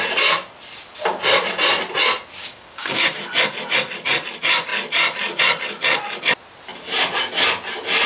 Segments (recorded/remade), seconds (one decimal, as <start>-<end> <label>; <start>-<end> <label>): 0.0-2.4 recorded; 2.4-3.2 remade; 3.2-8.1 recorded